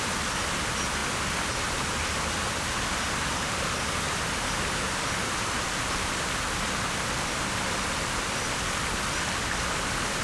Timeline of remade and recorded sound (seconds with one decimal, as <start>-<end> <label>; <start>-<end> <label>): 0.0-10.2 recorded